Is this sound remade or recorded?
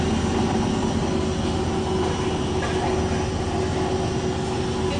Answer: recorded